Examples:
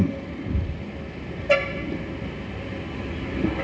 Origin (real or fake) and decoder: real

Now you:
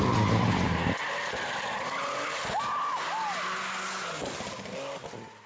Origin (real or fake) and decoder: real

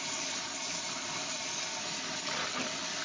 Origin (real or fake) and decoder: real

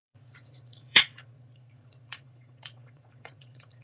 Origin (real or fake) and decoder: fake, vocoder, Vocos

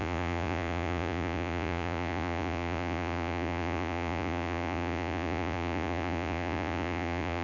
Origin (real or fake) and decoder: fake, vocoder, Vocos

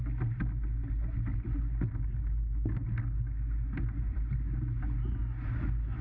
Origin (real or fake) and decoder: real